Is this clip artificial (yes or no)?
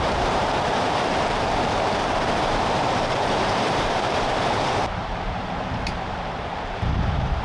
yes